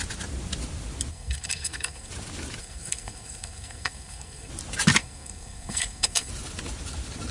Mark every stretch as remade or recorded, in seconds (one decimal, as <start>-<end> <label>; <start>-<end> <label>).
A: 0.0-1.1 recorded; 1.1-2.1 remade; 2.1-2.6 recorded; 2.6-4.5 remade; 4.5-5.0 recorded; 5.0-6.3 remade; 6.3-7.3 recorded